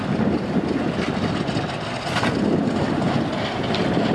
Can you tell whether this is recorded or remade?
recorded